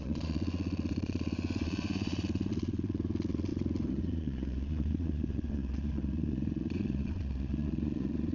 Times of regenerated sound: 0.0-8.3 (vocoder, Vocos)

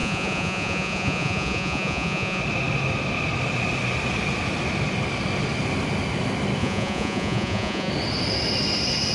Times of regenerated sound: 0.0-2.4 (vocoder, Vocos); 6.6-7.9

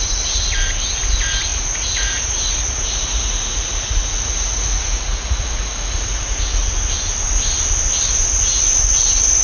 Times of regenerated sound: 1.5-6.4 (vocoder, Vocos)

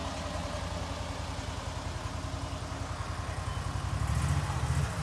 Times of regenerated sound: none

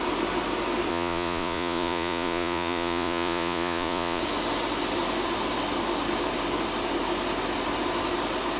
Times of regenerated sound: 0.9-4.2 (vocoder, Vocos)

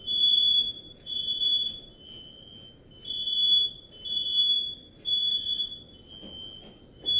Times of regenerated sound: 0.0-1.9 (vocoder, Vocos)

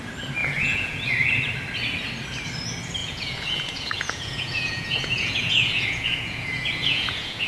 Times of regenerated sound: 0.4-1.1 (vocoder, Vocos); 3.0-7.5